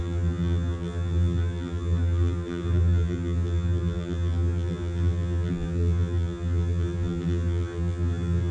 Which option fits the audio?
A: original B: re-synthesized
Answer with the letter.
B